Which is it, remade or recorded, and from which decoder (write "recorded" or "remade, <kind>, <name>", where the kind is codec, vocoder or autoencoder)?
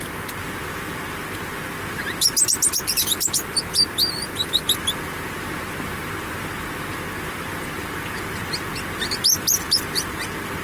recorded